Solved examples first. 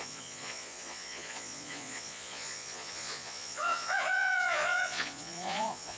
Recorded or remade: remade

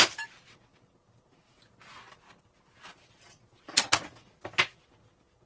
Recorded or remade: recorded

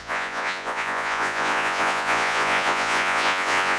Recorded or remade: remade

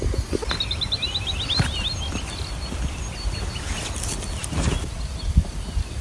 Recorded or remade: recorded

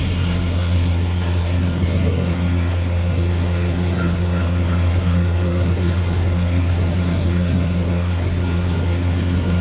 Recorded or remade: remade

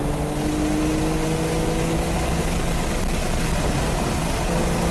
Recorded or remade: recorded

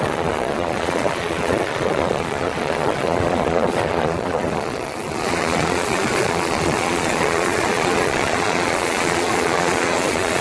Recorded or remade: remade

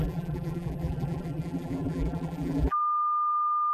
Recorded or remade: remade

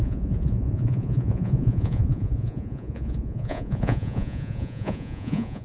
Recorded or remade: remade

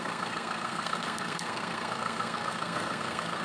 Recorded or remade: remade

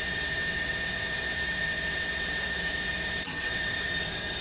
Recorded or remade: remade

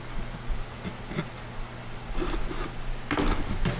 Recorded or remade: recorded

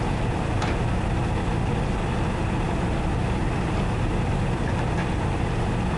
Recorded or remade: recorded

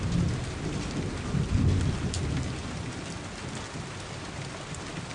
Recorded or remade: recorded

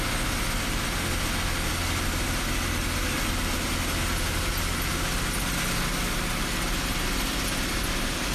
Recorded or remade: recorded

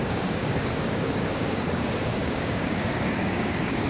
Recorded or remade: remade